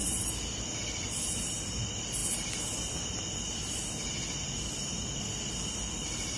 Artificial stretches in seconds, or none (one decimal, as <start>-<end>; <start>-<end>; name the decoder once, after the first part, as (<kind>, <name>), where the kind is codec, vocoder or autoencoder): none